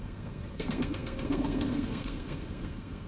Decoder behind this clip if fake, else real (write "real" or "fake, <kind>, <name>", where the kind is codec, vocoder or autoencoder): fake, codec, SNAC